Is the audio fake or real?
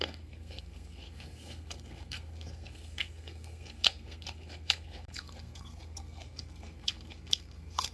fake